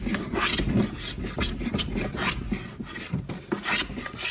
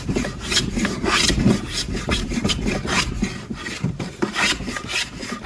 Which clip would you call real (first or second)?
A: first